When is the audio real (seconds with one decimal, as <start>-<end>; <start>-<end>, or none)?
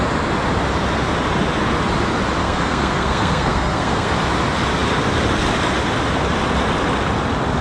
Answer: 0.0-2.4; 4.1-7.6